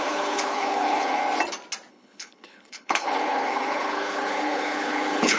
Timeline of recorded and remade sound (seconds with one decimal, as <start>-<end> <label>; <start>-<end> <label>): 0.0-1.2 remade; 1.2-1.9 recorded; 1.9-5.4 remade